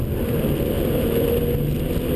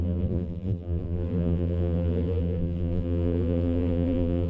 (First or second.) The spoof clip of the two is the second